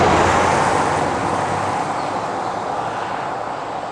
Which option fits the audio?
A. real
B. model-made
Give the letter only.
A